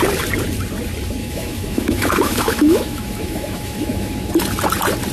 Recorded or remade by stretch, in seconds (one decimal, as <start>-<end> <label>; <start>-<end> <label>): 0.0-1.2 recorded; 1.2-4.3 remade; 4.3-5.1 recorded